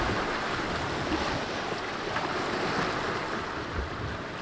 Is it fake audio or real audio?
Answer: real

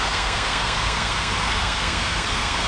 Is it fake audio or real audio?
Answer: fake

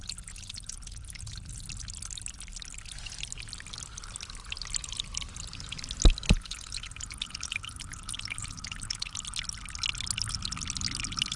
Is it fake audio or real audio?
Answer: real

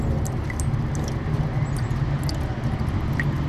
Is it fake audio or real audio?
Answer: real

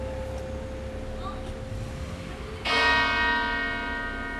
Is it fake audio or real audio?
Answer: real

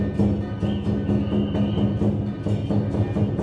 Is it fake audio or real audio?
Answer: real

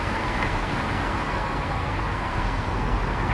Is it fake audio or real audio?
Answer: fake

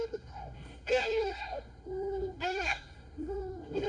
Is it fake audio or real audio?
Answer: fake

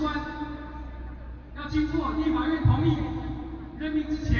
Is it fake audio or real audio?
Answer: real